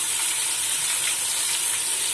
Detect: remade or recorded recorded